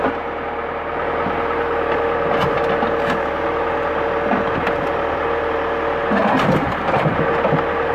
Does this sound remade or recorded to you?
recorded